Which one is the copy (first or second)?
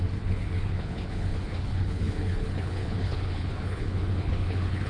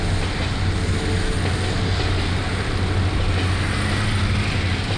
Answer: first